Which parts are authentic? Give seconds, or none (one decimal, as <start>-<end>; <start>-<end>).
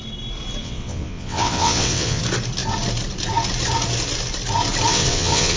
0.0-0.6; 2.2-4.9